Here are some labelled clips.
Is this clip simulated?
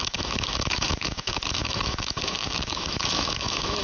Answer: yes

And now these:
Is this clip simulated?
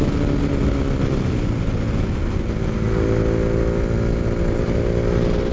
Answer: no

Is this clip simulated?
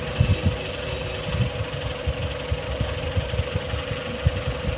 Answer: no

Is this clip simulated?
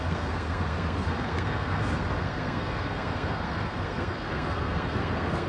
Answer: yes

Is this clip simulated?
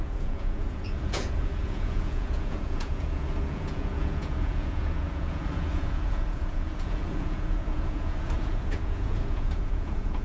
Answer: yes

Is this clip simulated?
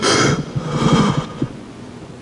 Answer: yes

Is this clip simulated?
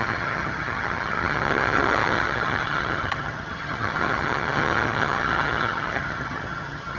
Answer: yes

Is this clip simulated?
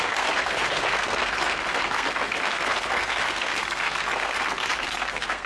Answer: yes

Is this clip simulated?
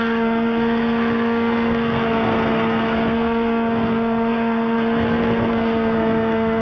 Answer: yes